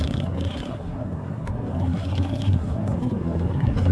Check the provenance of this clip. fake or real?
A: fake